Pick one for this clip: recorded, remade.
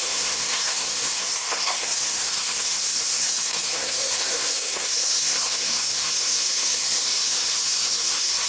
remade